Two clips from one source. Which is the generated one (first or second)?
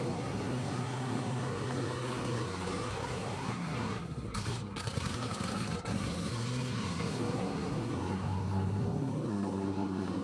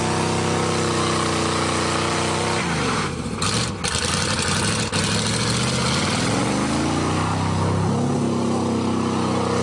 first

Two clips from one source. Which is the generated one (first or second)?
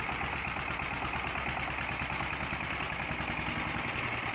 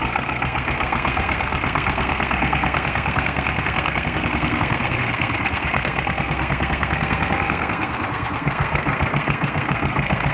second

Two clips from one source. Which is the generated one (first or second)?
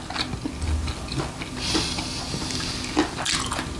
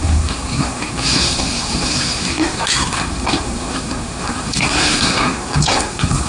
second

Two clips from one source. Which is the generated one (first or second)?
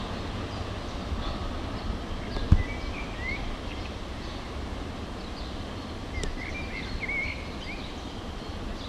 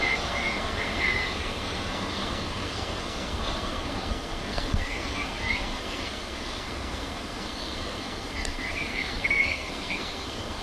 second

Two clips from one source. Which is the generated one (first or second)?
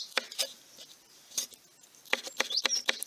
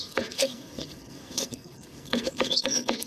second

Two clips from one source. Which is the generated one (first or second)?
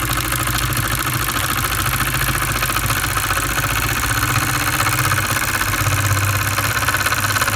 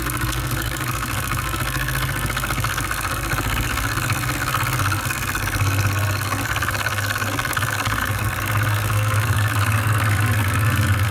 second